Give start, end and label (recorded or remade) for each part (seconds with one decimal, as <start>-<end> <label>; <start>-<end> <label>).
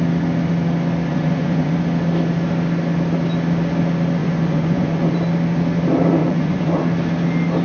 0.0-1.1 recorded; 1.1-1.7 remade; 1.7-4.2 recorded; 4.2-5.1 remade; 5.1-6.2 recorded; 6.2-6.8 remade; 6.8-7.6 recorded